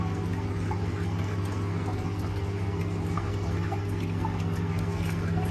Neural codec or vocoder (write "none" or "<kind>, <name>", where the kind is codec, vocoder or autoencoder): codec, SNAC